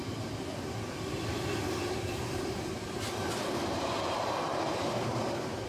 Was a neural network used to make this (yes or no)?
no